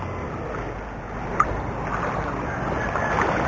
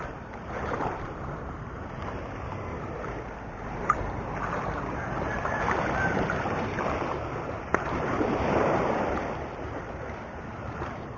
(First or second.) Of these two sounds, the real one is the first